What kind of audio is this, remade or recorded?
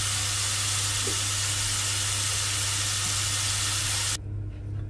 recorded